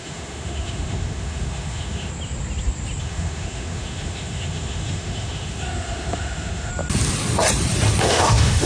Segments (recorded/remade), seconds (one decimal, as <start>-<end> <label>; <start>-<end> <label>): 0.0-2.1 remade; 2.1-3.0 recorded; 3.0-6.7 remade; 6.7-8.0 recorded; 8.0-8.7 remade